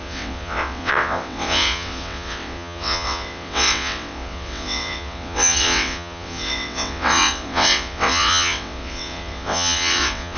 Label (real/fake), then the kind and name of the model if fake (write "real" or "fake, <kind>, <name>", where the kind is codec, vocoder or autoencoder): fake, vocoder, WaveNeXt